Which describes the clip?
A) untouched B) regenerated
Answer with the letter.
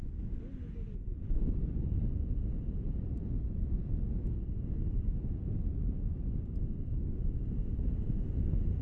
A